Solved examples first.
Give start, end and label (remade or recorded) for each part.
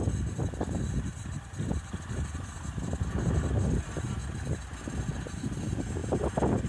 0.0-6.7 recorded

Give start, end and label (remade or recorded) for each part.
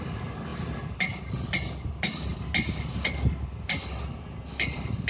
0.0-5.1 recorded